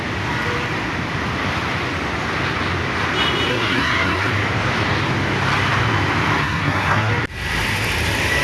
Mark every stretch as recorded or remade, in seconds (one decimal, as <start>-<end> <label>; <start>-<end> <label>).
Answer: 0.0-3.5 recorded; 3.5-4.3 remade; 4.3-6.4 recorded; 6.4-7.1 remade; 7.1-8.4 recorded